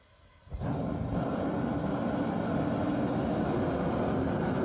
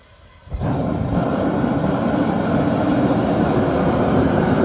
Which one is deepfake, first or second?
second